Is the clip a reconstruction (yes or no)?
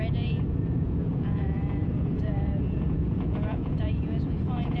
yes